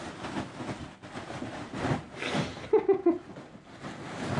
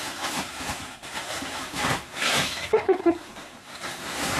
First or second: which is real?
first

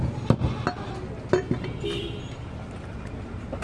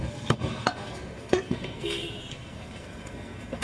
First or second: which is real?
first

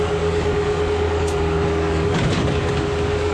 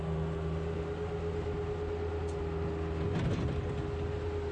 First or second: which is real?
second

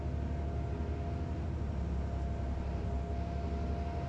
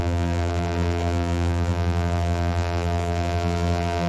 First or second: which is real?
first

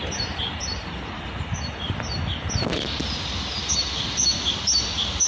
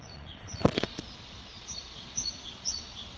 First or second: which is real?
first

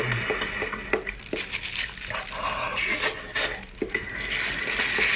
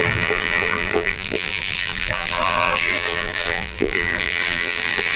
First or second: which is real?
first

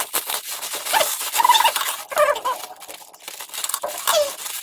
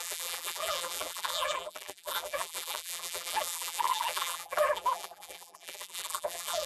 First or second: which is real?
first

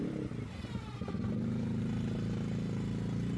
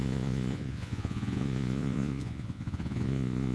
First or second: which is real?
first